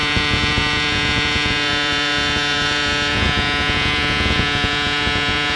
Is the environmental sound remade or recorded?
remade